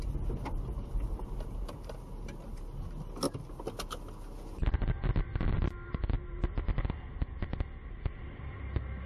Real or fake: real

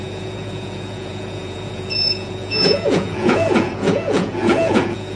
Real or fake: fake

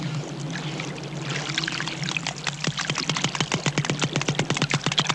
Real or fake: real